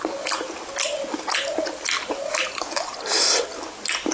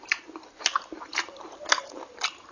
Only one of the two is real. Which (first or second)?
first